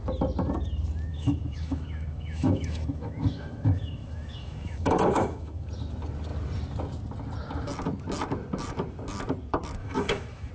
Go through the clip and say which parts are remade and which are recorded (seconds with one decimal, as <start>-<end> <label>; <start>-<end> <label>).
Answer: 0.0-1.1 recorded; 1.1-5.7 remade; 5.7-9.8 recorded; 9.8-10.5 remade